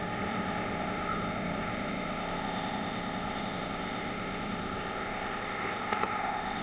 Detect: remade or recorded remade